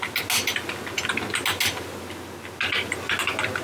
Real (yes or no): yes